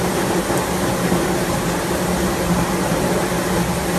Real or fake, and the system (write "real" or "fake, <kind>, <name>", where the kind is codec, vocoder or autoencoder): real